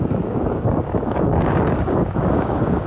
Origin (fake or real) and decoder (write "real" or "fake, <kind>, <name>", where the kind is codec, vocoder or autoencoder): fake, codec, DAC